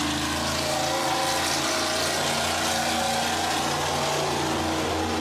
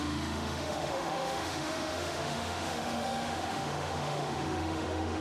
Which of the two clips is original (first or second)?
first